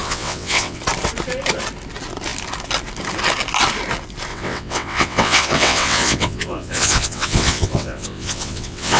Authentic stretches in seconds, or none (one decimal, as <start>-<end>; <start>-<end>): 0.8-4.3